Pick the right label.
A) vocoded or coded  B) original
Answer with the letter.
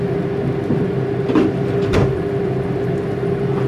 A